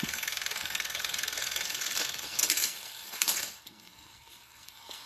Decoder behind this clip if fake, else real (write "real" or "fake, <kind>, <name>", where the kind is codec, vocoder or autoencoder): fake, codec, SNAC